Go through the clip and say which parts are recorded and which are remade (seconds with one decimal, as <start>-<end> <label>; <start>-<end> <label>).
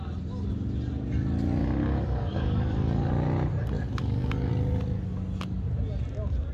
0.0-1.6 recorded; 1.6-3.1 remade; 3.1-4.0 recorded; 4.0-4.5 remade; 4.5-6.5 recorded